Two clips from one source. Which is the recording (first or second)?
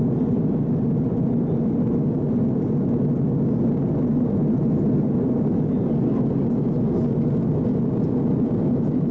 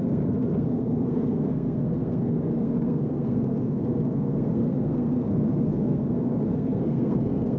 first